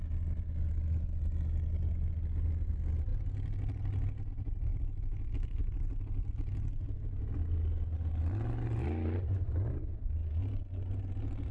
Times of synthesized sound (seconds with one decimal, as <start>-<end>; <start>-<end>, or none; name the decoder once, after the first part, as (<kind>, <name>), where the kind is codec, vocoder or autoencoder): none